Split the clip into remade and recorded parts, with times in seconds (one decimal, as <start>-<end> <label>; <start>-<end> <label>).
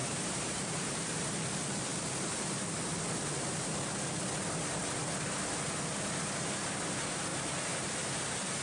0.0-1.2 remade; 1.2-7.3 recorded; 7.3-7.9 remade; 7.9-8.6 recorded